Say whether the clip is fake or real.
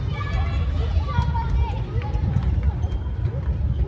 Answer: real